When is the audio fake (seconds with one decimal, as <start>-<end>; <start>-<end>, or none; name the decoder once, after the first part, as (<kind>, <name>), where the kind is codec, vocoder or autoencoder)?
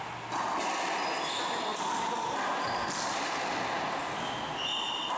none